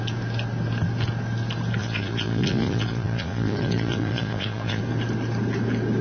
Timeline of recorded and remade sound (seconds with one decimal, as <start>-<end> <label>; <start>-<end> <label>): 0.0-1.8 recorded; 1.8-4.8 remade; 4.8-6.0 recorded